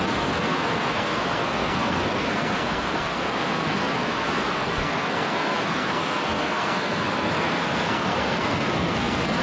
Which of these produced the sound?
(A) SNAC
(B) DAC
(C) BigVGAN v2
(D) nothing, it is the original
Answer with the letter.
A